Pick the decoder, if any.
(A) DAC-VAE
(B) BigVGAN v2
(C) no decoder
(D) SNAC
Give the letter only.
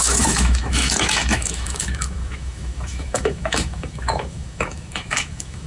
A